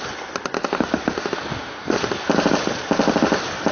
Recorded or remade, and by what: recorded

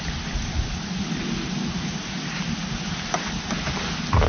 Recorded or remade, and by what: recorded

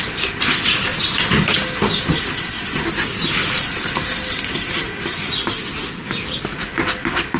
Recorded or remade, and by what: recorded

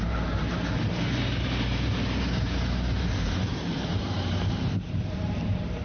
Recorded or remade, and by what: remade, vocoder, BigVGAN v2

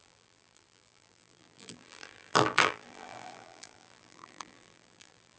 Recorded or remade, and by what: remade, vocoder, BigVGAN v2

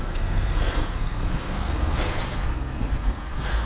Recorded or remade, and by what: remade, codec, SNAC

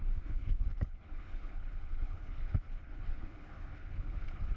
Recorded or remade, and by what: remade, codec, HILCodec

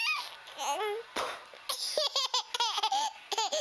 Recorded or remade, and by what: recorded